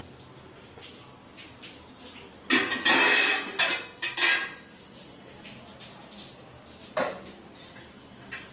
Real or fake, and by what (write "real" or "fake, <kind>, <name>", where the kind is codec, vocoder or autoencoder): real